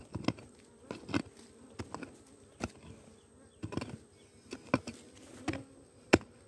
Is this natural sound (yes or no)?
yes